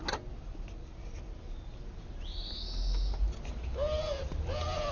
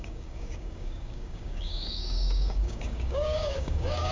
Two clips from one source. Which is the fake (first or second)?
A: second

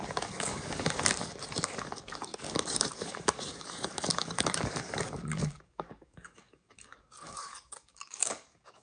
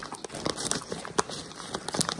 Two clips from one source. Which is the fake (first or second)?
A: first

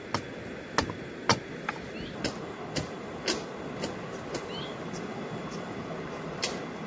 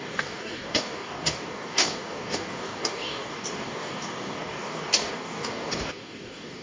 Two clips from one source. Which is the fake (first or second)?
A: second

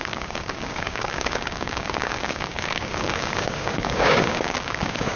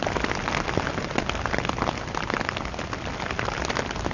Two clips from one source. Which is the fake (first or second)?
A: first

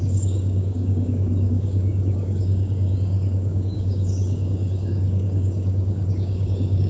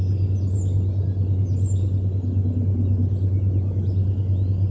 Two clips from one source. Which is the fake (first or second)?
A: first